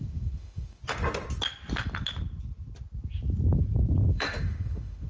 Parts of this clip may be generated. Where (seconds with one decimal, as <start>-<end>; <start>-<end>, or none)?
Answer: 0.0-0.8; 4.1-5.1